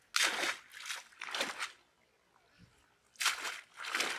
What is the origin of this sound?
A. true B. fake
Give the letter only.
A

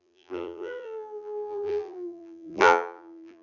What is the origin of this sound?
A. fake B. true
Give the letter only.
A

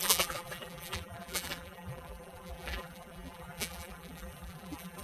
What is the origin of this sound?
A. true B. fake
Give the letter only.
B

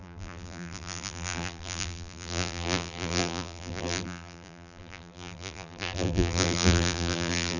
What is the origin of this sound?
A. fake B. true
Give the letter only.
A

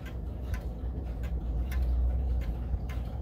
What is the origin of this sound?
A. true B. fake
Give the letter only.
B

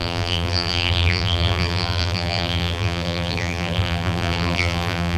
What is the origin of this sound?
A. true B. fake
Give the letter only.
B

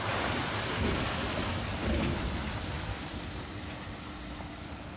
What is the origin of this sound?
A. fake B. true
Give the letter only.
A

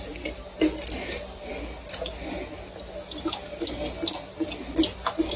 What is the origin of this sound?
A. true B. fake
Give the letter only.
A